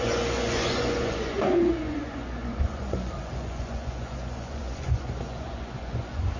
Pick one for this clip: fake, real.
fake